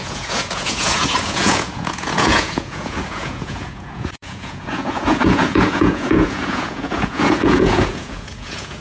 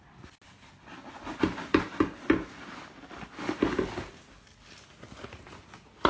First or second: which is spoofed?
first